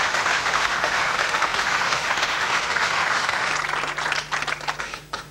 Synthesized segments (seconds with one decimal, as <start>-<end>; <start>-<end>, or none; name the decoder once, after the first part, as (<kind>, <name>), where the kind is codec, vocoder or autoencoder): 0.0-3.5 (autoencoder, DAC-VAE); 4.8-5.3